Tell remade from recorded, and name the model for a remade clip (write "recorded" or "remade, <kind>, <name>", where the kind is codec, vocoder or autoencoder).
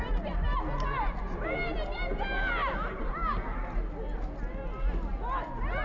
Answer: recorded